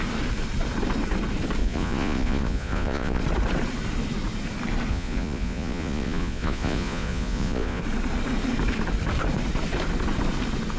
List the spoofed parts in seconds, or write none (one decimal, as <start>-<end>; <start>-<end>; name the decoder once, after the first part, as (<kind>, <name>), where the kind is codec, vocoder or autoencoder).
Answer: 1.6-3.2 (vocoder, Vocos); 4.9-7.8